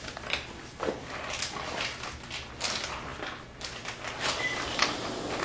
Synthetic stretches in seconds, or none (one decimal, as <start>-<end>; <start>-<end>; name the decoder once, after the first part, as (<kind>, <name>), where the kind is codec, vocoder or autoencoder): none